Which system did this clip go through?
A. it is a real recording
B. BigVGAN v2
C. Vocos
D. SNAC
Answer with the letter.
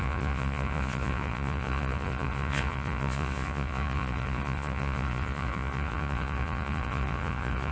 C